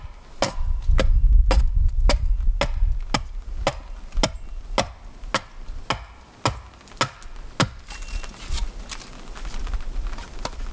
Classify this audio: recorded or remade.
recorded